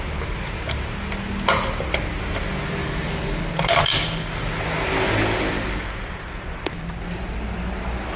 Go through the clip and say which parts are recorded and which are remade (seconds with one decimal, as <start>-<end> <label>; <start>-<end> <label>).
0.0-2.8 recorded; 2.8-3.5 remade; 3.5-8.2 recorded